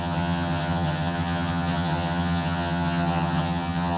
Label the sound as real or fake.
fake